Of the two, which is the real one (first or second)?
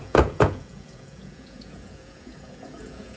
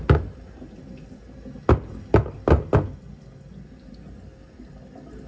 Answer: second